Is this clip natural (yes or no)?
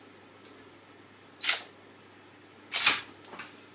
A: yes